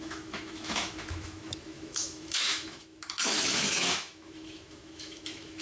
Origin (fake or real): fake